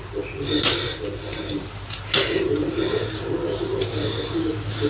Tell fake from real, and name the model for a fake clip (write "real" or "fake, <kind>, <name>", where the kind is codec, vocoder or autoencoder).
real